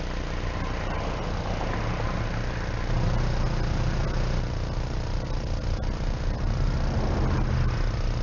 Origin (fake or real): real